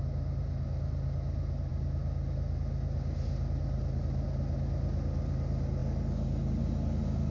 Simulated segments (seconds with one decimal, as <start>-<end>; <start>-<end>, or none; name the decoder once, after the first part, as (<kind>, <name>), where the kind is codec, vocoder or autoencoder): none